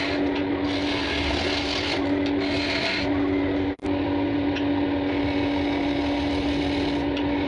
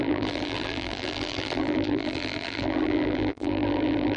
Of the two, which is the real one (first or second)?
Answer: first